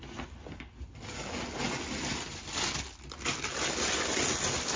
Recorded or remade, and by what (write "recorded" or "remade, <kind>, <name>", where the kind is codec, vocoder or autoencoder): recorded